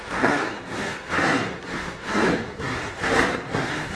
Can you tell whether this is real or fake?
fake